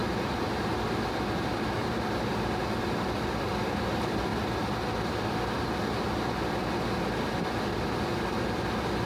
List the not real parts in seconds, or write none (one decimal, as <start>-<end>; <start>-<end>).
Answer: 0.0-0.6